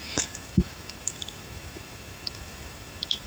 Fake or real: fake